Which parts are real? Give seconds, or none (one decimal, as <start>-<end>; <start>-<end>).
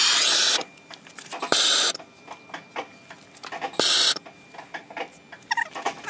0.0-6.1